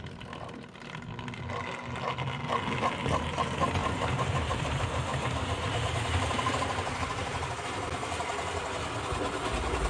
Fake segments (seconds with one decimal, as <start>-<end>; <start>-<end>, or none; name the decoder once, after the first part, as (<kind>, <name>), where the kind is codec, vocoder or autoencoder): 3.8-7.6 (vocoder, BigVGAN v2)